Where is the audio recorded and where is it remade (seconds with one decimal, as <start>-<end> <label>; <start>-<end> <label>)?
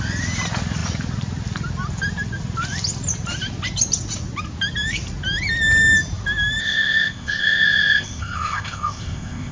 0.0-6.6 recorded; 6.6-9.5 remade